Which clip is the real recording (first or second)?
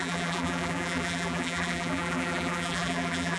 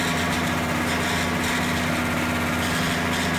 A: second